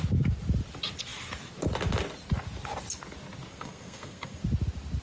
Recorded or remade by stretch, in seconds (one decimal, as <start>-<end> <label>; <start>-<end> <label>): 0.0-3.5 recorded; 3.5-4.4 remade; 4.4-5.0 recorded

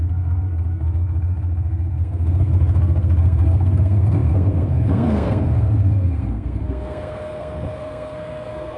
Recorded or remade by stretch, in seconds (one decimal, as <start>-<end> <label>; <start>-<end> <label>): 0.0-8.8 remade

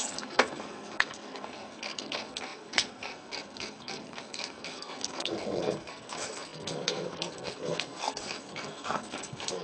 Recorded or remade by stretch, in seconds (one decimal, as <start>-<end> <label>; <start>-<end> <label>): 0.0-9.6 remade

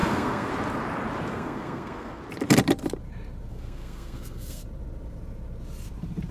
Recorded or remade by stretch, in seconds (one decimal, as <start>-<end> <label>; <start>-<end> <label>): 0.0-0.5 remade; 0.5-1.3 recorded; 1.3-2.2 remade; 2.2-3.5 recorded; 3.5-4.6 remade; 4.6-6.3 recorded